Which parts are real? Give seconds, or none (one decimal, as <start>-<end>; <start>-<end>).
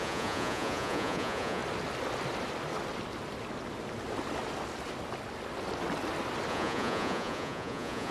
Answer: 1.6-6.5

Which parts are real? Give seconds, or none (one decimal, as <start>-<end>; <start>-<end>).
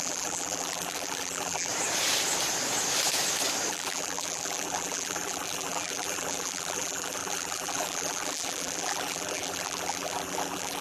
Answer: 1.7-3.7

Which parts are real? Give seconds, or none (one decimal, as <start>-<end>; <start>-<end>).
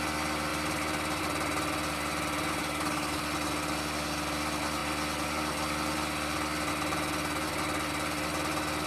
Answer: 0.0-2.6; 3.2-8.9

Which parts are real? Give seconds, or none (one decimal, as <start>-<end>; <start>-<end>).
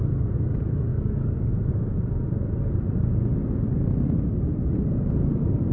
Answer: 0.0-0.9; 1.7-5.7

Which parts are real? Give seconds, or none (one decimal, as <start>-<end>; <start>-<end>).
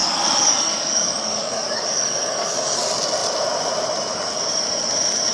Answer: 2.8-5.3